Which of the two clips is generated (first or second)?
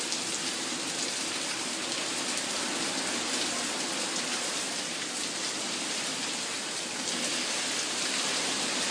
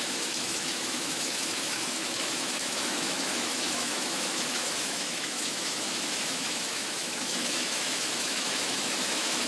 second